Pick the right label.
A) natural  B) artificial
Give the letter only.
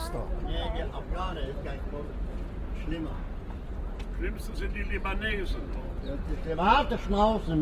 A